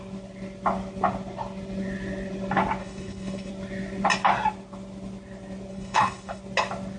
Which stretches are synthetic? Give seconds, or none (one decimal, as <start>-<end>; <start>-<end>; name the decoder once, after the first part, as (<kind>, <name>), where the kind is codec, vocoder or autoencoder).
2.8-3.5 (codec, HILCodec); 5.7-6.4